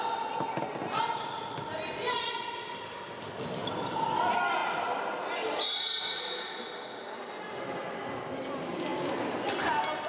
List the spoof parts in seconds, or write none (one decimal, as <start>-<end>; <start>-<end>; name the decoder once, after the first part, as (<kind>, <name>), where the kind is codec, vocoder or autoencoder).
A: none